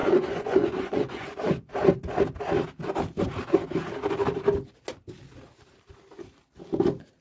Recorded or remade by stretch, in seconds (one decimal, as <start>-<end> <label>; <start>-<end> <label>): 0.0-1.7 remade; 1.7-7.2 recorded